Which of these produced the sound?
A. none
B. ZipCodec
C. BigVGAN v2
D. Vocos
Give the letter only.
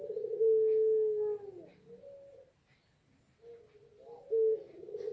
A